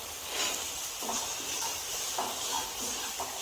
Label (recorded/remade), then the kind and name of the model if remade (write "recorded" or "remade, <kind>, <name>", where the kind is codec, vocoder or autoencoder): recorded